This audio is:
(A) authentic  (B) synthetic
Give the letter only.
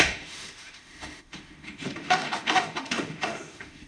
B